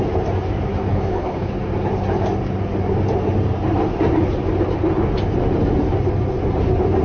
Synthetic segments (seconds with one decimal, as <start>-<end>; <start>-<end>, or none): 0.9-1.5